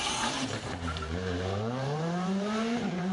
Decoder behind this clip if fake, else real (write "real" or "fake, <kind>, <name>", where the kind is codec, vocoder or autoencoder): fake, vocoder, BigVGAN v2